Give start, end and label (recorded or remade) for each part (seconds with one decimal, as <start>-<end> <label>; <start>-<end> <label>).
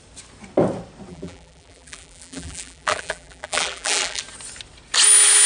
0.0-1.1 recorded; 1.1-4.2 remade; 4.2-5.5 recorded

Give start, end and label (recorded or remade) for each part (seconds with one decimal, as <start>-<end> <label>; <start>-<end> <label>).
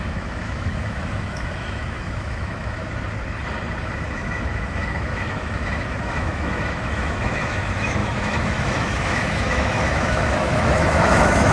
0.0-2.8 remade; 2.8-3.8 recorded; 3.8-11.5 remade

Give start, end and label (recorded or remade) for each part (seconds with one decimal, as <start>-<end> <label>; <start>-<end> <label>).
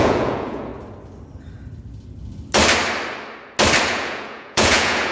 0.0-0.7 remade; 0.7-3.8 recorded; 3.8-5.1 remade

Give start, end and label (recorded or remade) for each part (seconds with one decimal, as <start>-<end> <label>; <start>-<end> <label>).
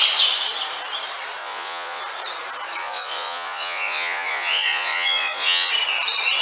0.0-1.4 recorded; 1.4-2.0 remade; 2.0-2.8 recorded; 2.8-5.7 remade; 5.7-6.4 recorded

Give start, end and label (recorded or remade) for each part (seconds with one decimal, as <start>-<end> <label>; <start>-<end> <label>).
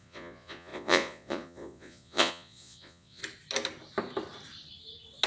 0.0-3.2 remade; 3.2-5.3 recorded